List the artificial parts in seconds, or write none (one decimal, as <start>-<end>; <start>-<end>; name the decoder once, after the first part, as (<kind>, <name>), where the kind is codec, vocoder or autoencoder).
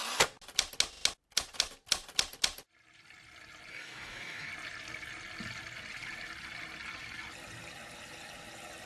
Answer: 3.7-4.5 (codec, DAC)